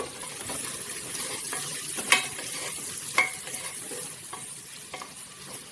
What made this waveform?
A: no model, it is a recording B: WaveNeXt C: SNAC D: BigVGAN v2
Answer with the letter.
A